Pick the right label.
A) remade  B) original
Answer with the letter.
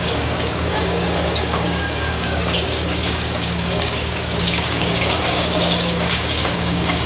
A